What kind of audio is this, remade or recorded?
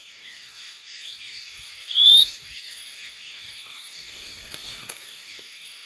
remade